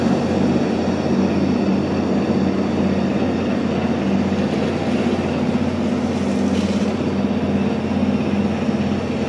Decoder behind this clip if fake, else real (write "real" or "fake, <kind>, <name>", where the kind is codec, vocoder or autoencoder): real